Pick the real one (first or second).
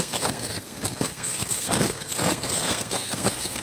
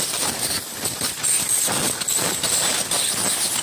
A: second